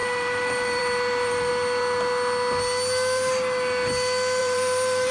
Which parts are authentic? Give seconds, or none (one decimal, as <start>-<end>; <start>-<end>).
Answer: 1.5-4.4